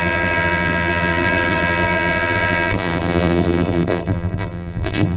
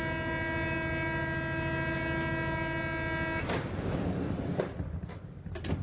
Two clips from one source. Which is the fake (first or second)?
first